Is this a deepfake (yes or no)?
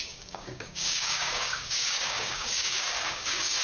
yes